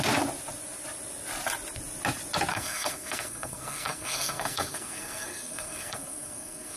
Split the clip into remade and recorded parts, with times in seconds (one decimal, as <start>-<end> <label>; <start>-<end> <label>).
0.0-2.5 recorded; 2.5-6.8 remade